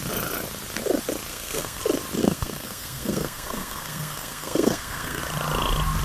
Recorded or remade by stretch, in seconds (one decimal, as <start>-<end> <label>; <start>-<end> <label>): 0.0-1.3 recorded; 1.3-1.8 remade; 1.8-2.2 recorded; 2.2-5.2 remade; 5.2-6.0 recorded